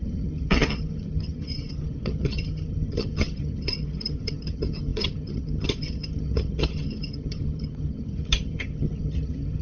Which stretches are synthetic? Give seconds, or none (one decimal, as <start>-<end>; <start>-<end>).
0.0-9.6